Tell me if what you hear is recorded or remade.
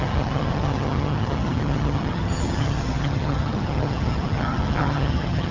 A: remade